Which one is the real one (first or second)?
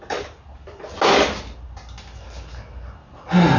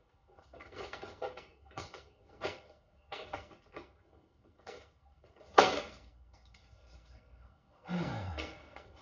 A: first